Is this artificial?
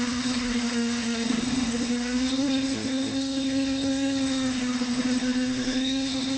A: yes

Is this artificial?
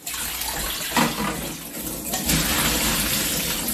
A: no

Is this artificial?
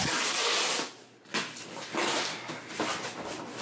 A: no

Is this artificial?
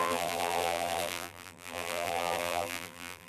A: yes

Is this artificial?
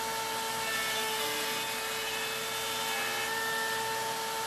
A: no